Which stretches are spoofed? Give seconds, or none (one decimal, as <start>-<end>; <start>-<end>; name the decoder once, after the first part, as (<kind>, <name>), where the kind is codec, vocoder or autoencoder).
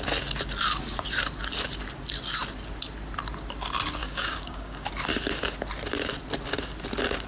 4.0-4.9 (codec, DAC)